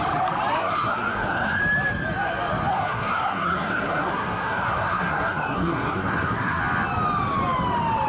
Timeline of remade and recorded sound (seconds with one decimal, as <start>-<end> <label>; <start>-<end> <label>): 0.0-0.6 recorded; 0.6-1.6 remade; 1.6-2.7 recorded; 2.7-6.6 remade; 6.6-8.1 recorded

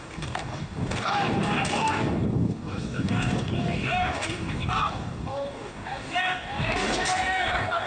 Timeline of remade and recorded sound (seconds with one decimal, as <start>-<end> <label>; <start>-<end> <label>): 0.0-7.9 remade

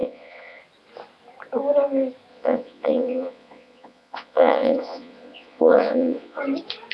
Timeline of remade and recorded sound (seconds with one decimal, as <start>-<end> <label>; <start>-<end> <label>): 0.0-0.6 remade; 0.6-2.3 recorded; 2.3-6.4 remade; 6.4-6.9 recorded

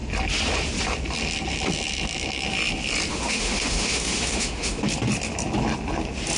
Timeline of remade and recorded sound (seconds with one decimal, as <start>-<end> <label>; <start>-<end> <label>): 0.0-3.1 recorded; 3.1-4.8 remade; 4.8-6.4 recorded

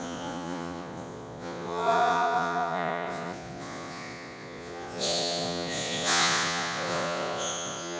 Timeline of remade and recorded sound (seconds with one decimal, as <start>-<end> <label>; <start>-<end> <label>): 0.0-8.0 remade

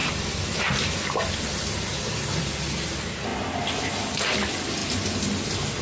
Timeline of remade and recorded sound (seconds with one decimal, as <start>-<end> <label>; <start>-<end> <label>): 0.0-5.8 recorded